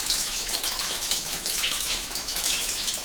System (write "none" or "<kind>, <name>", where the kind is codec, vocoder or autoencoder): autoencoder, DAC-VAE